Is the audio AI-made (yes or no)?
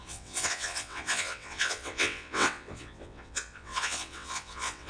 yes